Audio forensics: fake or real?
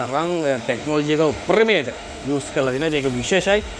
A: fake